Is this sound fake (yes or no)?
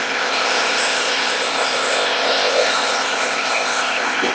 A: yes